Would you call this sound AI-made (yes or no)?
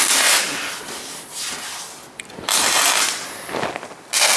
no